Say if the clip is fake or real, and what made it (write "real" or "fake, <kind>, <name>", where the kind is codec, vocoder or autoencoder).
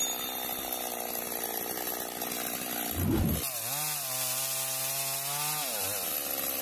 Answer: real